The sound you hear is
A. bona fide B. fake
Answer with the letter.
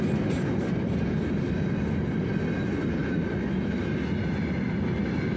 A